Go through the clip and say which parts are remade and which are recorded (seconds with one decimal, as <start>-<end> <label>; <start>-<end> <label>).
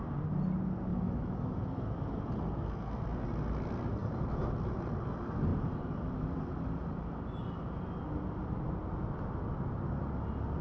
0.0-0.9 recorded; 0.9-2.2 remade; 2.2-10.6 recorded